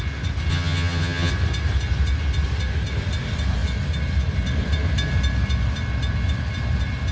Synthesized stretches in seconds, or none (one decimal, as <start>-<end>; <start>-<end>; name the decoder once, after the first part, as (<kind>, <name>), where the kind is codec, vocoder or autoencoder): 0.5-1.3 (vocoder, HiFi-GAN)